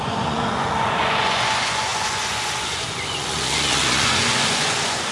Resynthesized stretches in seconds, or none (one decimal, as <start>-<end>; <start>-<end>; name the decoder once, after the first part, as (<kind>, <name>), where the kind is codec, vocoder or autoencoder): 0.0-5.1 (vocoder, Vocos)